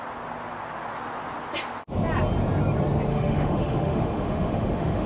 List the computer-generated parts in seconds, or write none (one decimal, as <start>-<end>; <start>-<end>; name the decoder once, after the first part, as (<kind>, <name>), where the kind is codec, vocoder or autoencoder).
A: 3.1-5.1 (autoencoder, DAC-VAE)